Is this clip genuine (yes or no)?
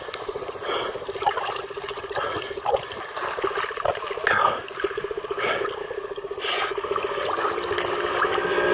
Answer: yes